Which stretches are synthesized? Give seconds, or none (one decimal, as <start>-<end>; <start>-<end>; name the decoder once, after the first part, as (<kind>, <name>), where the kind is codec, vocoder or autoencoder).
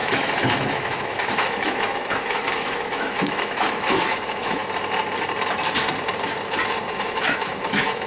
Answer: 0.0-4.6 (autoencoder, DAC-VAE); 6.9-8.1